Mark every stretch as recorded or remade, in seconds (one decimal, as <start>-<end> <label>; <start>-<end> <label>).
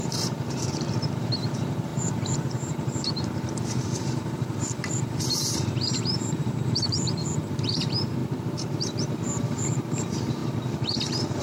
0.0-10.4 remade; 10.4-11.4 recorded